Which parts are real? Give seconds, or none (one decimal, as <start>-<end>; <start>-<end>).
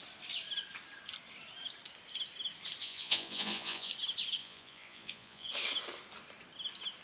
0.0-2.8; 3.9-4.4; 5.5-7.0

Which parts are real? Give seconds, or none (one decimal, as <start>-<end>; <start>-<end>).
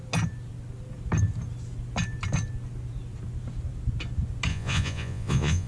0.0-4.5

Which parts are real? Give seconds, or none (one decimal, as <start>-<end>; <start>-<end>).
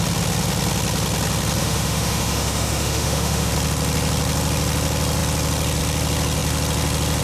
0.0-1.6; 3.5-7.2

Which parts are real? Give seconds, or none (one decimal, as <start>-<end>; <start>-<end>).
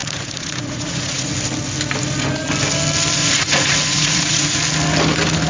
1.3-3.2; 4.6-5.5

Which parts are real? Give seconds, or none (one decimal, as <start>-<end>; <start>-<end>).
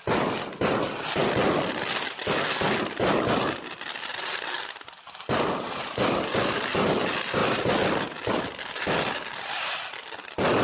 0.0-10.6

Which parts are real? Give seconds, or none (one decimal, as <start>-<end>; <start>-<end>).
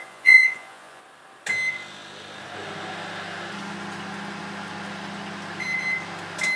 1.0-6.6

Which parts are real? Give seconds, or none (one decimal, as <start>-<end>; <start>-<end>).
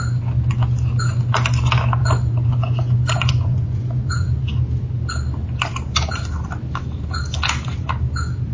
0.0-2.0; 4.6-8.5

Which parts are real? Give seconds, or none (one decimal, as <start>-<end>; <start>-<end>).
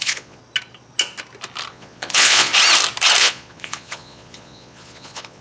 0.4-1.7; 2.5-3.2